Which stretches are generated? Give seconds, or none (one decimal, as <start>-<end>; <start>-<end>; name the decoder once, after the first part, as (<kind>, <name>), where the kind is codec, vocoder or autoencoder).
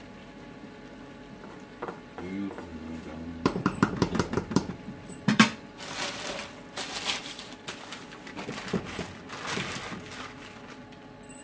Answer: 2.7-7.2 (vocoder, BigVGAN v2)